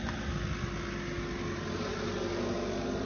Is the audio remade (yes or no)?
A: no